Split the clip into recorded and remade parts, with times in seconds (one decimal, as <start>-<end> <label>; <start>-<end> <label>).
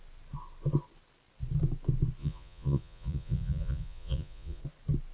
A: 0.0-2.2 recorded; 2.2-4.6 remade; 4.6-5.1 recorded